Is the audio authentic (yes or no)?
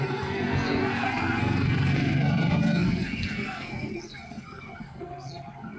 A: no